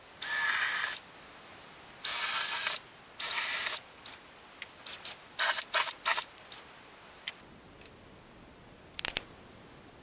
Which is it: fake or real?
real